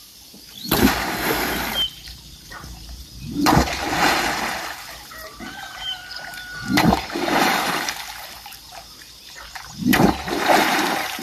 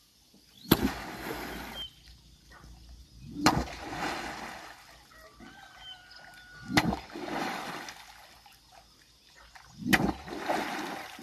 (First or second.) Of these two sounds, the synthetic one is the first